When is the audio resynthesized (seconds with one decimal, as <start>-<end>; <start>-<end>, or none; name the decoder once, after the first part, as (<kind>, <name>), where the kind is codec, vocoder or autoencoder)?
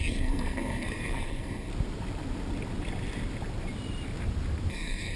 0.0-1.7 (codec, SNAC); 4.7-5.2